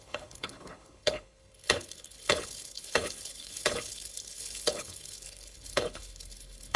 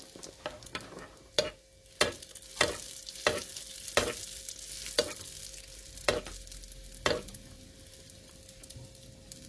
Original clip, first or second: second